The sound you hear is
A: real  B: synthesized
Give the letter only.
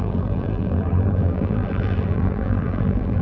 B